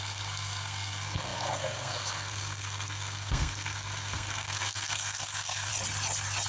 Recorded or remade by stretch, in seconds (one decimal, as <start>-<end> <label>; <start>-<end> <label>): 0.0-5.7 remade; 5.7-6.5 recorded